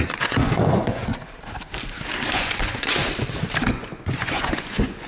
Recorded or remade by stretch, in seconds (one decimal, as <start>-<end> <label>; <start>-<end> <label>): 0.0-1.1 remade; 1.1-2.3 recorded; 2.3-3.0 remade; 3.0-3.7 recorded; 3.7-5.1 remade